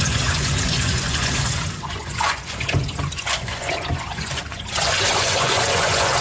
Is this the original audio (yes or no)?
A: no